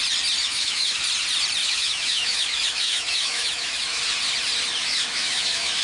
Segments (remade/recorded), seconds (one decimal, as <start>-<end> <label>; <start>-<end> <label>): 0.0-0.4 recorded; 0.4-1.0 remade; 1.0-1.6 recorded; 1.6-4.0 remade; 4.0-4.8 recorded; 4.8-5.8 remade